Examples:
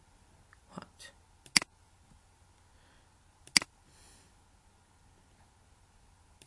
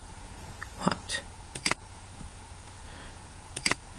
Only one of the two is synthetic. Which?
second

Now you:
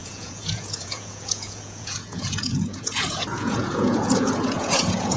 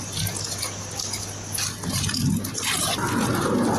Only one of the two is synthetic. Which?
first